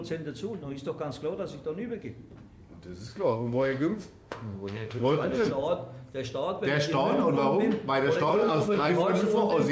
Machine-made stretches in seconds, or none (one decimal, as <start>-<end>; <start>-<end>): 3.1-5.5; 8.3-8.9